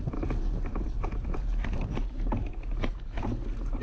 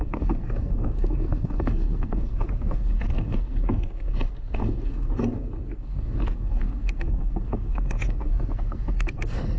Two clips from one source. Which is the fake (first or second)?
second